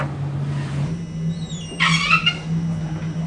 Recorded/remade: recorded